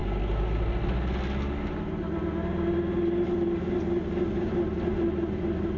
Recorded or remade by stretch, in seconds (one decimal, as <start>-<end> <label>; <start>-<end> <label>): 0.0-5.8 recorded